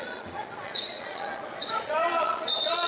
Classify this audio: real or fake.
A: fake